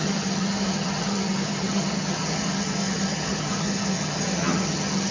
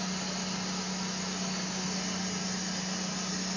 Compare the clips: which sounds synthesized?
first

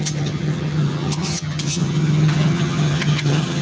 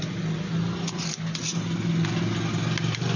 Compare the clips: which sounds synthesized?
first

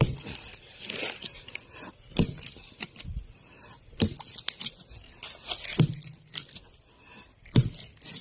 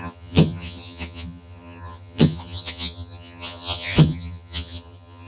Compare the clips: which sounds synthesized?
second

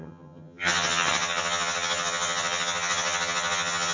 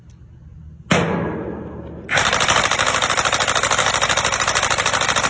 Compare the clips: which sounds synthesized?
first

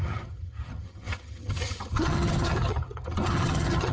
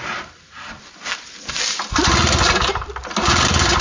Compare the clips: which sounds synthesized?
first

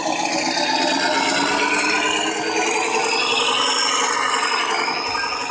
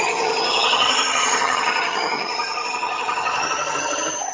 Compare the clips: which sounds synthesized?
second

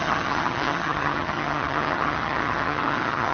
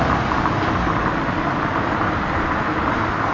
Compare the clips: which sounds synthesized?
first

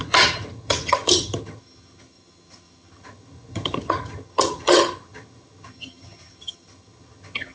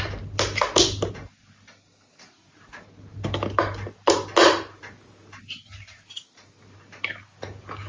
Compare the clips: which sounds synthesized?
first